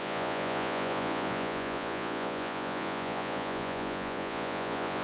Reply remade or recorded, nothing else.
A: remade